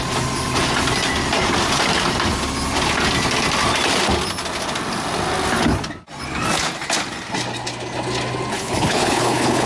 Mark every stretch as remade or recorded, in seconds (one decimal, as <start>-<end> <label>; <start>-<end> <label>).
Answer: 0.0-8.5 recorded; 8.5-9.7 remade